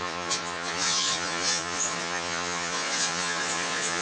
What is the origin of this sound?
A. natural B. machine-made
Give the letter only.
B